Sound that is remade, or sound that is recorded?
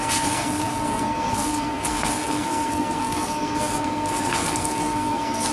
remade